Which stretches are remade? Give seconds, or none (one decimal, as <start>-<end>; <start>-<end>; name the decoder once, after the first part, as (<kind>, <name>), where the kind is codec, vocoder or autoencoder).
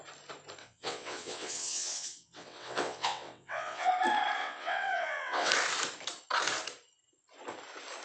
0.6-3.9 (vocoder, WaveNeXt); 4.4-5.5